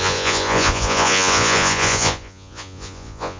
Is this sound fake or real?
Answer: fake